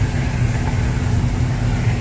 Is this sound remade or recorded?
recorded